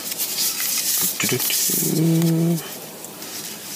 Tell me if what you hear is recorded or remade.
recorded